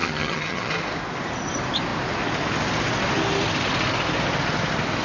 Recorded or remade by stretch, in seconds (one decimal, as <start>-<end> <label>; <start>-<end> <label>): 0.0-0.7 remade; 0.7-5.0 recorded